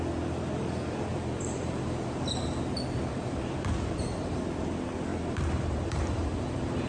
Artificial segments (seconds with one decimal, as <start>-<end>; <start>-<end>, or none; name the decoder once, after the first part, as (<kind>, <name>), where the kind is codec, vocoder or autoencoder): 1.1-2.6 (vocoder, BigVGAN v2); 3.1-4.4; 5.1-6.9